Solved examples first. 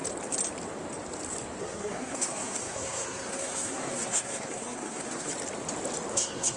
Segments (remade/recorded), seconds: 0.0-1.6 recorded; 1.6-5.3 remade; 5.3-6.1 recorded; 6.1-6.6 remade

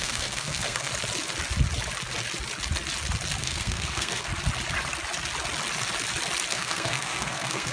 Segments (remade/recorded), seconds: 0.0-0.9 remade; 0.9-3.4 recorded; 3.4-4.3 remade; 4.3-6.5 recorded; 6.5-7.7 remade

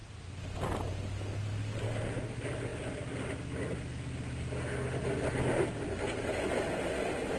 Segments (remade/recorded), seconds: 0.0-7.4 recorded

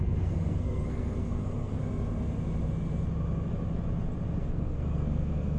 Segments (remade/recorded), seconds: 0.0-1.8 remade; 1.8-4.4 recorded; 4.4-5.6 remade

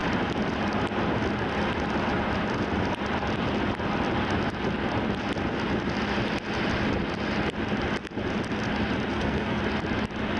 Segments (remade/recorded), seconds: 0.0-9.1 recorded; 9.1-9.6 remade; 9.6-10.4 recorded

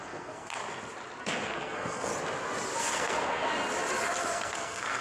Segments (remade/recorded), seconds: 0.0-0.6 remade; 0.6-1.2 recorded; 1.2-2.1 remade; 2.1-2.8 recorded; 2.8-3.5 remade; 3.5-4.2 recorded; 4.2-5.0 remade

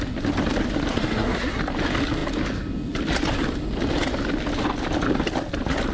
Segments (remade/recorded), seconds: 0.0-0.9 recorded; 0.9-1.6 remade; 1.6-5.9 recorded